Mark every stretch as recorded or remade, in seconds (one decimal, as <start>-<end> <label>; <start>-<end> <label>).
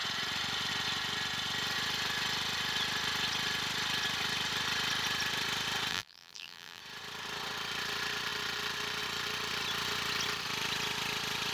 0.0-5.9 recorded; 5.9-6.8 remade; 6.8-11.5 recorded